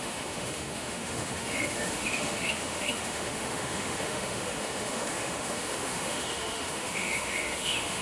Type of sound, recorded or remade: remade